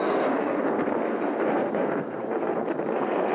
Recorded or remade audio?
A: remade